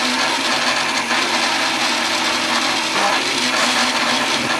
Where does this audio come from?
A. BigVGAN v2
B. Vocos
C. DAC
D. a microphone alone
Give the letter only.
D